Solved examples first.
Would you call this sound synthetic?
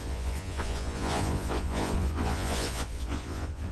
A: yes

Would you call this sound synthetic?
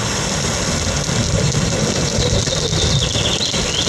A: no